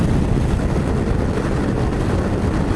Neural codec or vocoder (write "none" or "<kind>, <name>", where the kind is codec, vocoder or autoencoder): none